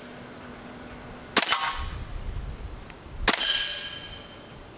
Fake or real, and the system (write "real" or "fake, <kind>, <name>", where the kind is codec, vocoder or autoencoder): real